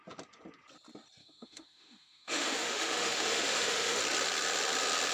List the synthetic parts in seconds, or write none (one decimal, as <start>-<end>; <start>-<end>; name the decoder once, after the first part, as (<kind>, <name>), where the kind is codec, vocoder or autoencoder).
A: 1.2-4.0 (autoencoder, DAC-VAE)